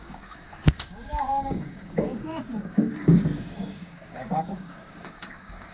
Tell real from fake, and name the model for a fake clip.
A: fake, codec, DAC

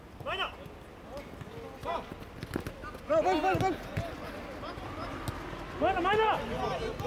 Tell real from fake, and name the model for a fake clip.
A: real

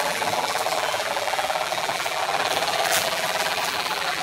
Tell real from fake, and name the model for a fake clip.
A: fake, vocoder, BigVGAN v2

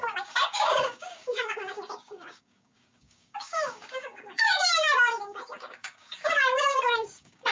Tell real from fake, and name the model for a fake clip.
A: fake, codec, DAC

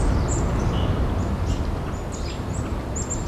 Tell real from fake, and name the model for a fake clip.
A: real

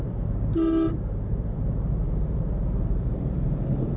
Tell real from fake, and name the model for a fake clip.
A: fake, vocoder, BigVGAN v2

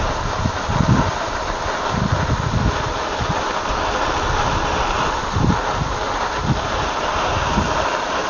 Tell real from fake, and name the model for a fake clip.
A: fake, vocoder, BigVGAN v2